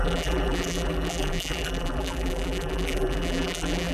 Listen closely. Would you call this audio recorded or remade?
remade